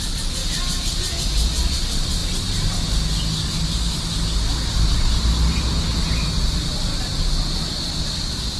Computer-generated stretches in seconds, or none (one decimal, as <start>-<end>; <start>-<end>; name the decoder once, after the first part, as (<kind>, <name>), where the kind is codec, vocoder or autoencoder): 0.0-0.4 (vocoder, BigVGAN v2); 1.7-2.2; 6.3-6.9; 8.0-8.6